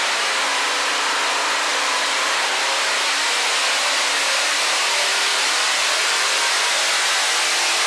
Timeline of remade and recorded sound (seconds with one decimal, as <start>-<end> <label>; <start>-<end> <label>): 0.0-1.7 recorded; 1.7-2.5 remade; 2.5-5.3 recorded; 5.3-6.4 remade; 6.4-7.9 recorded